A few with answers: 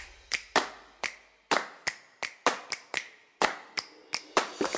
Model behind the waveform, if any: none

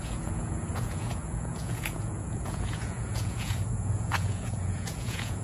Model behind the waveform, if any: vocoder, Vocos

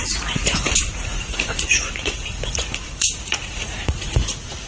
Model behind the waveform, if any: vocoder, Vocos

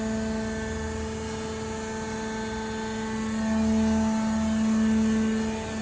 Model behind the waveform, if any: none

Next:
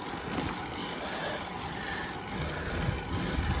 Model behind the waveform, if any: none